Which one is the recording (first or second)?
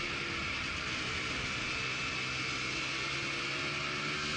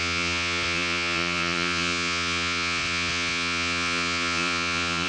first